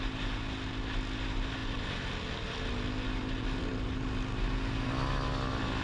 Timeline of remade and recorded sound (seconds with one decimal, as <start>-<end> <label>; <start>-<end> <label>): 0.0-5.8 recorded